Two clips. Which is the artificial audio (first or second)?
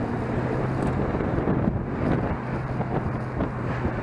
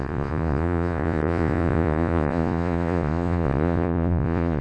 second